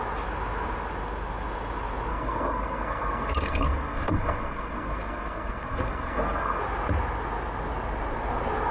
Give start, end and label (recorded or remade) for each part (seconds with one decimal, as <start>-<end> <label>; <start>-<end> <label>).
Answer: 0.0-2.1 recorded; 2.1-6.6 remade; 6.6-8.7 recorded